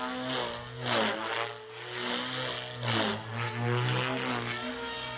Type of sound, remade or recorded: recorded